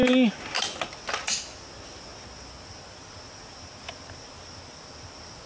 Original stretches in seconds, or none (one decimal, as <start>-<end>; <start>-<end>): 0.0-5.5